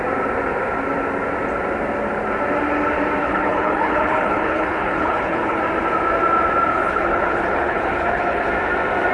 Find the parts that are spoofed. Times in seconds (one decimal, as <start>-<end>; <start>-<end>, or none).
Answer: 3.2-5.6; 6.7-8.5